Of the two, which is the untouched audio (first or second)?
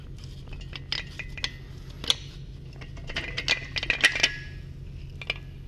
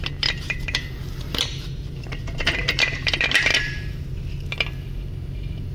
first